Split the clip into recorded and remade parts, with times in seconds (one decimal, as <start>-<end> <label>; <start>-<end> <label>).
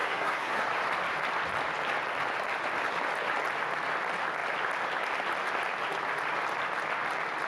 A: 0.0-0.6 remade; 0.6-7.5 recorded